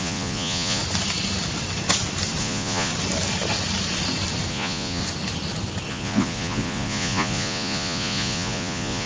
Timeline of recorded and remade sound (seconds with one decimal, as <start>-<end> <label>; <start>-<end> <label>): 0.0-0.8 remade; 0.8-2.4 recorded; 2.4-2.9 remade; 2.9-4.5 recorded; 4.5-5.0 remade; 5.0-5.9 recorded; 5.9-9.1 remade